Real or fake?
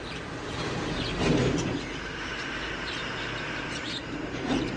fake